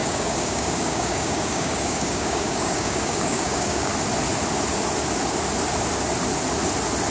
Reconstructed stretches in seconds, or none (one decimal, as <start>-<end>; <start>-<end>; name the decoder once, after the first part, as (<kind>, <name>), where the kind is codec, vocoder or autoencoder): 0.0-3.9 (codec, DAC)